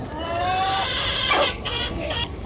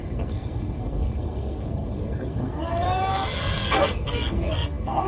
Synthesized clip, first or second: second